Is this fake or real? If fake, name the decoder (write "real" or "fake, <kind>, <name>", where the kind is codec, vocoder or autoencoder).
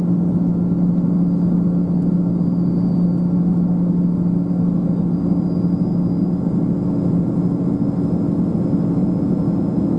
real